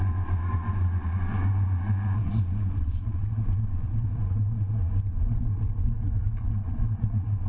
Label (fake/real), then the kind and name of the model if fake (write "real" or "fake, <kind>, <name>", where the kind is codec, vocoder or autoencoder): fake, vocoder, Vocos